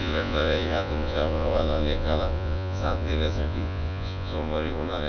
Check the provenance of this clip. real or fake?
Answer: fake